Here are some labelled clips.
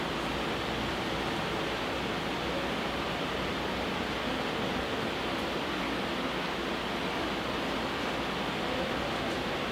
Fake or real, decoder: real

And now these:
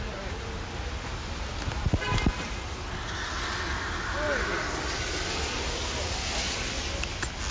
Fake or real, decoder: real